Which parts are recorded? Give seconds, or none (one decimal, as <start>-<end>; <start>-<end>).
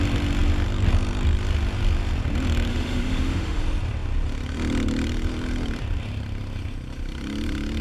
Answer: 0.0-2.7; 3.6-7.8